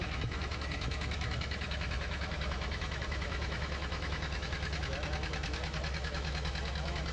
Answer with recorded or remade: remade